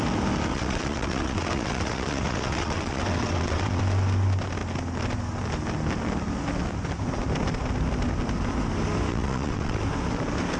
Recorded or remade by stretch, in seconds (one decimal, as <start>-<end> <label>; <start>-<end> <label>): 0.0-0.5 recorded; 0.5-3.8 remade; 3.8-9.1 recorded; 9.1-9.8 remade; 9.8-10.6 recorded